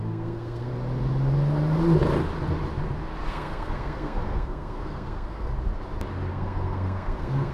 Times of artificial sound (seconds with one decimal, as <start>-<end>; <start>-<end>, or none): 0.0-0.7; 3.3-5.5; 6.3-7.5